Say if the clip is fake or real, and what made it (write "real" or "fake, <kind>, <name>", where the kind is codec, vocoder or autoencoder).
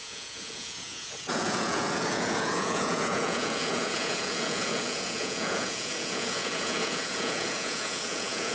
fake, vocoder, Vocos